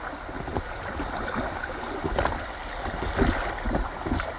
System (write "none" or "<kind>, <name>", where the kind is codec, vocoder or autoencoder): none